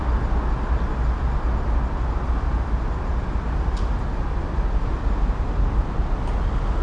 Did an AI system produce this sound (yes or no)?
no